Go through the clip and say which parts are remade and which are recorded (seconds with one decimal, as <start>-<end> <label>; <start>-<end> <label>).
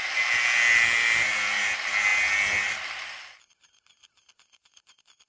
0.0-5.3 recorded